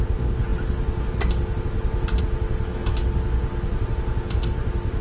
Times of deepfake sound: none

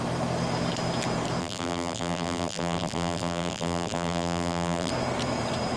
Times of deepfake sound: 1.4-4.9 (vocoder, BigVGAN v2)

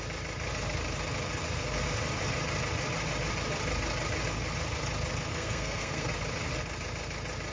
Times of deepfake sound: 5.3-6.1 (codec, SNAC)

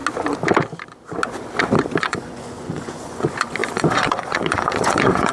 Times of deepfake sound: 2.0-5.3 (vocoder, Vocos)